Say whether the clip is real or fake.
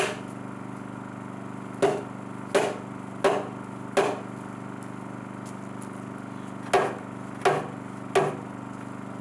real